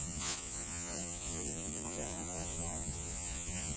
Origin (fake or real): fake